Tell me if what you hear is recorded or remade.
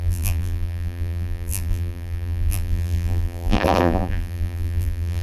remade